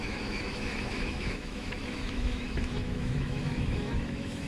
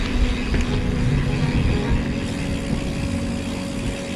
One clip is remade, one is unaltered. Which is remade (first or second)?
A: first